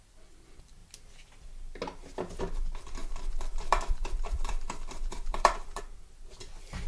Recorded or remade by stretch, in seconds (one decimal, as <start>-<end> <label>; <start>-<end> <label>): 0.0-3.0 recorded; 3.0-5.8 remade; 5.8-6.9 recorded